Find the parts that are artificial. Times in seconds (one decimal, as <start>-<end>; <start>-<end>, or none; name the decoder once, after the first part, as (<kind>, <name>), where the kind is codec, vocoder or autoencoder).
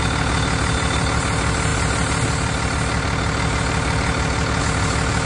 none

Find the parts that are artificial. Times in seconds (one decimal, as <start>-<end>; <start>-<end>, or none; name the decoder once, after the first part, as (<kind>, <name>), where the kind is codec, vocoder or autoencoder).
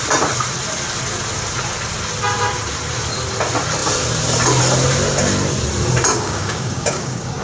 6.1-7.4 (codec, DAC)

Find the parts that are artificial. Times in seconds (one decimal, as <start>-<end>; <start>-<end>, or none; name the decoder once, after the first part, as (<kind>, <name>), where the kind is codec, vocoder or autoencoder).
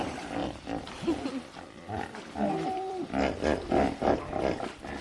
0.4-3.1 (vocoder, BigVGAN v2)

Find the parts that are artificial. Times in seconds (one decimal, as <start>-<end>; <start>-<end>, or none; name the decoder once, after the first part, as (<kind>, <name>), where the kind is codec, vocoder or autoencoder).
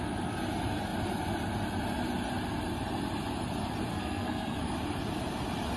3.9-4.6 (codec, SNAC)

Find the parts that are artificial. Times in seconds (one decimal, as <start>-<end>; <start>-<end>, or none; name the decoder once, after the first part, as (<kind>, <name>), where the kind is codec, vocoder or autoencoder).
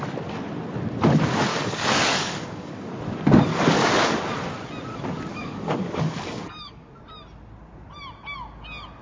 1.5-2.7 (codec, DAC); 3.5-4.2; 5.3-6.9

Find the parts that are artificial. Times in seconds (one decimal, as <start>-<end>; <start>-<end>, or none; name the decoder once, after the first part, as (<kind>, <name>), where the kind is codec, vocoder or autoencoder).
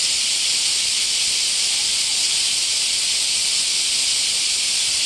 1.9-5.1 (vocoder, BigVGAN v2)